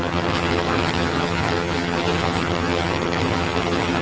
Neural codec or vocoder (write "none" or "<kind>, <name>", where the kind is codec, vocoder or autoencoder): vocoder, HiFi-GAN